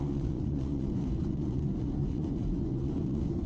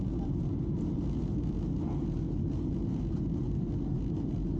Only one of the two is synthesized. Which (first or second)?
first